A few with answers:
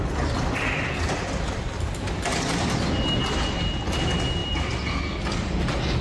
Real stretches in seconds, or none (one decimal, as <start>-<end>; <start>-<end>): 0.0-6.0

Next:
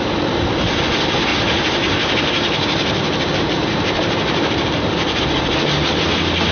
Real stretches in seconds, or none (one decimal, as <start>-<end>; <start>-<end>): 0.0-1.3; 5.2-6.5

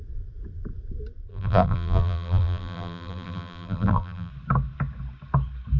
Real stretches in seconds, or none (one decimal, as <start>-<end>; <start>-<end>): 0.0-1.3; 4.3-5.8